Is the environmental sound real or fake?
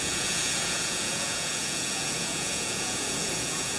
fake